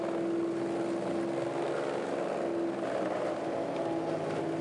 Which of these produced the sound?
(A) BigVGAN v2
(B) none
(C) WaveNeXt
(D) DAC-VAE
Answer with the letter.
B